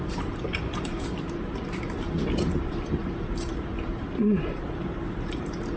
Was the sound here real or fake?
fake